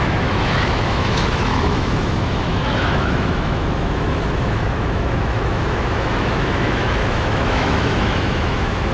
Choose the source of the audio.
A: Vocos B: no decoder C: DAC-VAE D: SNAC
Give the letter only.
C